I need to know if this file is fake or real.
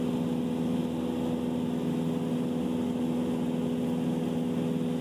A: real